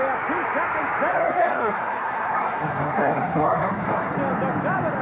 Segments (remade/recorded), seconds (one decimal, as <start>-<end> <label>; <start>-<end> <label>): 0.0-1.1 recorded; 1.1-4.1 remade; 4.1-5.0 recorded